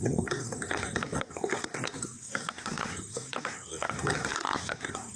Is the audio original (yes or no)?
no